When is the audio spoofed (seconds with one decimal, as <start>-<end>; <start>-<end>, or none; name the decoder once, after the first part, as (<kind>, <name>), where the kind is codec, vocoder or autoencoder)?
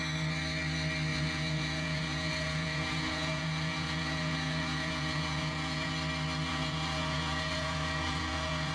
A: 1.1-5.9 (vocoder, Vocos); 6.5-8.7